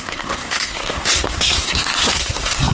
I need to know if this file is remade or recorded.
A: remade